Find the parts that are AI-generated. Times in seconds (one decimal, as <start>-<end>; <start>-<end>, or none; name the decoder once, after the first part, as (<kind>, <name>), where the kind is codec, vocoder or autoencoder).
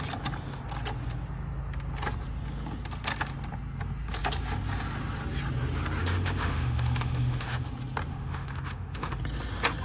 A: 6.0-7.7 (autoencoder, DAC-VAE); 8.1-9.2